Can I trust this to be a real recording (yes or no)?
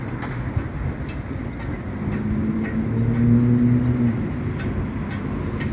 yes